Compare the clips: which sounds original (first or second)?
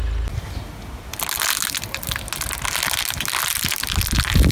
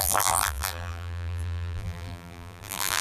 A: first